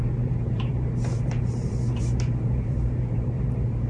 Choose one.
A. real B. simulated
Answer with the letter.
B